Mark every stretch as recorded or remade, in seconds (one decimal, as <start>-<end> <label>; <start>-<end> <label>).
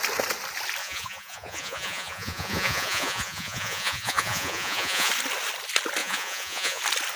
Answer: 0.0-0.8 recorded; 0.8-5.1 remade; 5.1-6.0 recorded; 6.0-6.8 remade; 6.8-7.2 recorded